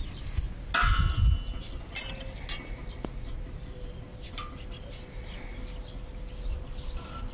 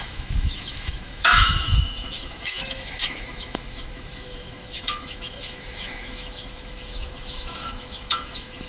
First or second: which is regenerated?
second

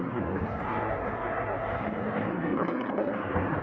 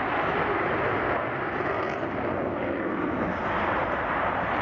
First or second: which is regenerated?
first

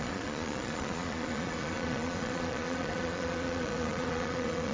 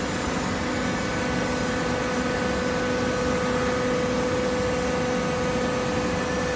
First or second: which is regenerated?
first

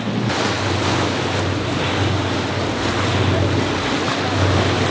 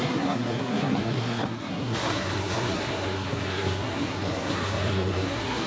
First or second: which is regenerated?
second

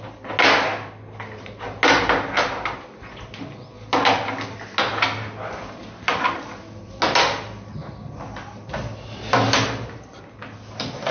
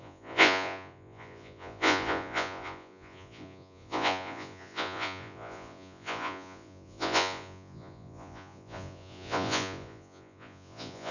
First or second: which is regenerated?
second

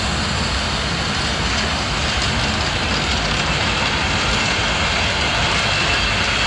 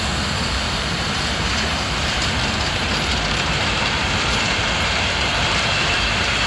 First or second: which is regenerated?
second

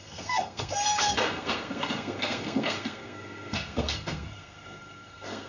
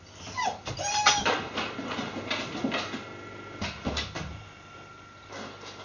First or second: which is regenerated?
first